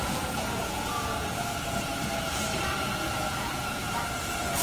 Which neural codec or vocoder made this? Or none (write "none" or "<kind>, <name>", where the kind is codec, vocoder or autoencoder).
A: vocoder, Vocos